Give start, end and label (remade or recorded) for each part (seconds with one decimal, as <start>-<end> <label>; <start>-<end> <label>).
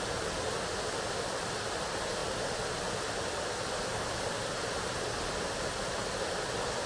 0.0-6.9 recorded